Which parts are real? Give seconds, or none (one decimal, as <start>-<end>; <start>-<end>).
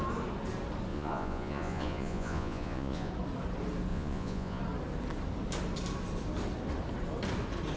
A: 0.0-0.9; 3.1-3.9; 4.6-7.8